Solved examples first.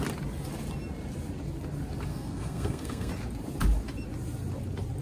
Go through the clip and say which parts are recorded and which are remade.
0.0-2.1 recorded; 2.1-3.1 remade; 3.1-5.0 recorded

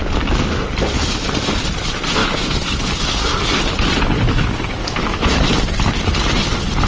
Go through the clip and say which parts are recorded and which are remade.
0.0-2.2 recorded; 2.2-2.8 remade; 2.8-4.8 recorded; 4.8-5.4 remade; 5.4-6.9 recorded

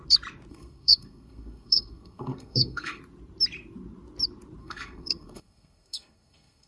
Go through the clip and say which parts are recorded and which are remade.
0.0-0.5 recorded; 0.5-3.0 remade; 3.0-4.6 recorded; 4.6-6.7 remade

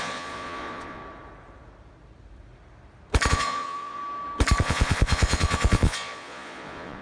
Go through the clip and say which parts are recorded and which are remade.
0.0-1.0 remade; 1.0-3.3 recorded; 3.3-4.0 remade; 4.0-4.6 recorded; 4.6-7.0 remade